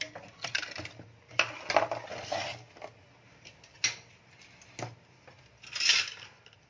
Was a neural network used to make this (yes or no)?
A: no